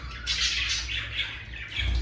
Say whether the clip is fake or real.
real